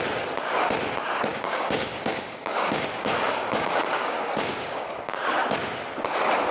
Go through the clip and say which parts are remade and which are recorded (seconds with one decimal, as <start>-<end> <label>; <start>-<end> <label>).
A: 0.0-1.3 recorded; 1.3-5.2 remade; 5.2-6.5 recorded